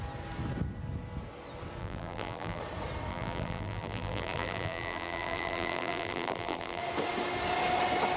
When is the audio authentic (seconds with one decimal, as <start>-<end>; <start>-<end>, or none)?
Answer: 0.0-1.8; 2.6-3.1; 6.8-8.2